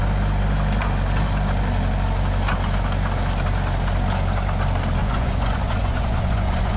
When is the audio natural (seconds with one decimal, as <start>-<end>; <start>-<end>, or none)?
0.0-5.0